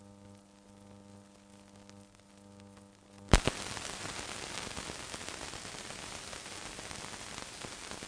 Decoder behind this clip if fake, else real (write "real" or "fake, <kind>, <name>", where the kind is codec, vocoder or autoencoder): real